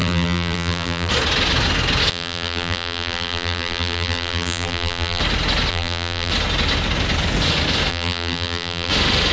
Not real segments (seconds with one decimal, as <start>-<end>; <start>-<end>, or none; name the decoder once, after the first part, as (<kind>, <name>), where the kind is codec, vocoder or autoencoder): 0.0-1.1 (vocoder, BigVGAN v2); 2.1-5.2; 5.7-6.3; 7.9-8.9